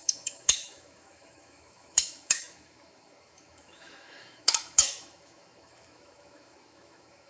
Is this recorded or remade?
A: remade